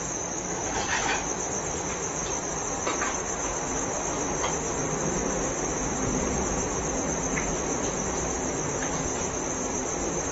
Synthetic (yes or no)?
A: no